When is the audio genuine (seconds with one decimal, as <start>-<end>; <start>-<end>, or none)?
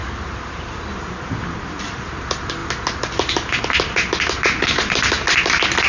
0.0-5.9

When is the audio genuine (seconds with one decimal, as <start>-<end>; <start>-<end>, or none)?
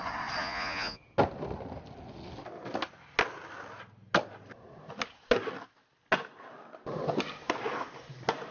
0.0-0.4; 1.0-8.5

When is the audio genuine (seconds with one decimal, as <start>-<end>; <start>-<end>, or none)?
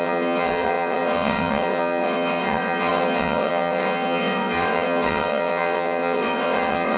none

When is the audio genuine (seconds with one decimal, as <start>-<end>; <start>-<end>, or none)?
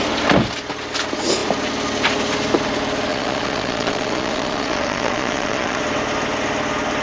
0.0-3.1; 5.8-7.0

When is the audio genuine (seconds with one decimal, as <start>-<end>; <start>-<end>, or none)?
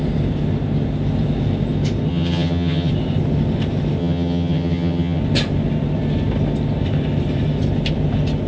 0.0-2.1; 2.9-4.0; 5.2-8.5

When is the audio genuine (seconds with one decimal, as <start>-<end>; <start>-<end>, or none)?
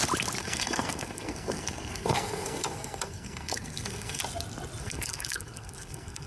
0.0-0.4; 4.2-4.8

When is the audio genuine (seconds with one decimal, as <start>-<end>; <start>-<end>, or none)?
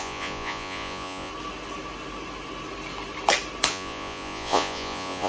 1.3-3.7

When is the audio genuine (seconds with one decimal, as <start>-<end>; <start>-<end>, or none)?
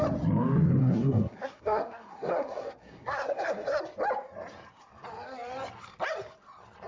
0.0-0.8; 3.8-6.9